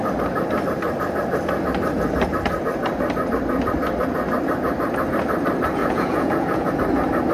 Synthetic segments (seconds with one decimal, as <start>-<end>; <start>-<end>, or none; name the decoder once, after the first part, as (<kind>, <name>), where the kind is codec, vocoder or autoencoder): 5.8-6.7 (vocoder, Vocos)